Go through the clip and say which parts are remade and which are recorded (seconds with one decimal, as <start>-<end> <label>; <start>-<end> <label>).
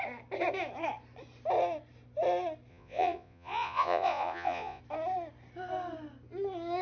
0.0-2.7 recorded; 2.7-4.8 remade; 4.8-6.8 recorded